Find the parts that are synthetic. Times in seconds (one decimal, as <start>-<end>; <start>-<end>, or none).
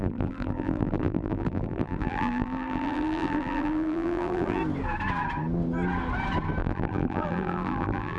0.0-4.6; 6.6-8.2